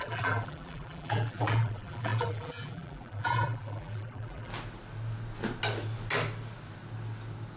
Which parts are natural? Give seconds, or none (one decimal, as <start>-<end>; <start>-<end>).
4.5-7.6